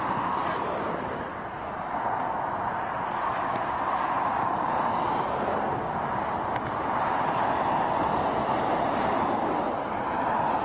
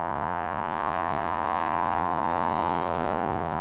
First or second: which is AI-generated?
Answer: second